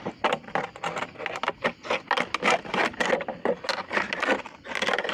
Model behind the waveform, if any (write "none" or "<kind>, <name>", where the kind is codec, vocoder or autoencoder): none